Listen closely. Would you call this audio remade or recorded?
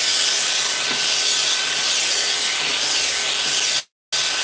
recorded